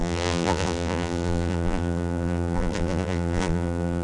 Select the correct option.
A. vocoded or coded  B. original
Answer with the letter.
A